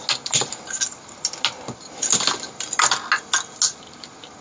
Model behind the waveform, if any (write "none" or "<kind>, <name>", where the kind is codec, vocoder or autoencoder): none